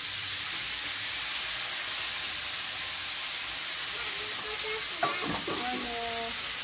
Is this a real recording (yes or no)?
yes